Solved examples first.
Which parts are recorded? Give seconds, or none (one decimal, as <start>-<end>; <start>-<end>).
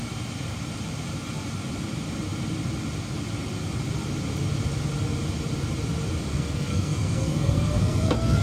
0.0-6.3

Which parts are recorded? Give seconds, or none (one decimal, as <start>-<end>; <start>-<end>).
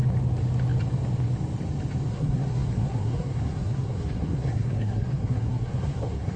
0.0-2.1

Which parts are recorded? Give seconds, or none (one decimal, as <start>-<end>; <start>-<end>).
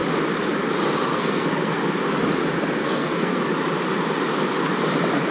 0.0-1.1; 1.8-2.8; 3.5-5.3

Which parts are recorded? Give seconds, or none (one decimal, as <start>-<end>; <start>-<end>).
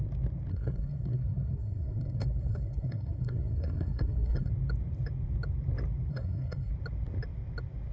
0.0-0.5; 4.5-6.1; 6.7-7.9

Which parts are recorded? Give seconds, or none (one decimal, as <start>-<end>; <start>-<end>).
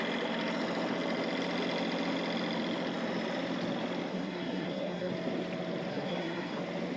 0.0-4.1; 5.1-5.9; 6.6-7.0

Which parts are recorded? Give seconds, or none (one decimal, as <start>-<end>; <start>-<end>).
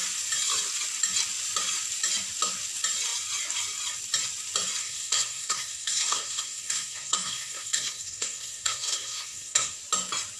0.0-4.8; 9.8-10.4